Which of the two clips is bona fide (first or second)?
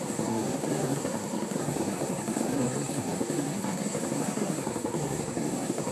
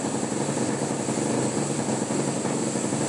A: second